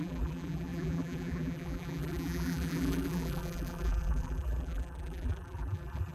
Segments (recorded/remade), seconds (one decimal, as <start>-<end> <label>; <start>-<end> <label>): 0.0-6.1 remade